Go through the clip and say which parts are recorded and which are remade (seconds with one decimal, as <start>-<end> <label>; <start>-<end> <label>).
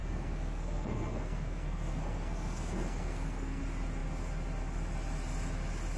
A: 0.0-3.6 remade; 3.6-6.0 recorded